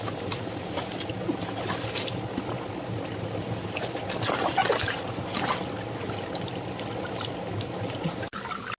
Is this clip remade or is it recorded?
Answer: recorded